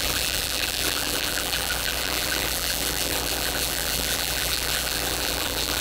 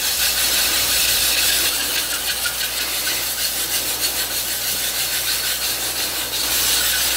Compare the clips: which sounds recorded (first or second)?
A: second